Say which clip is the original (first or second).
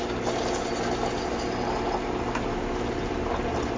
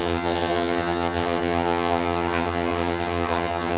first